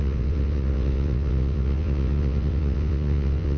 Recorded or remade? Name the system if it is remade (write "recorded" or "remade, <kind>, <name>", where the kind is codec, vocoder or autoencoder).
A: remade, vocoder, WaveNeXt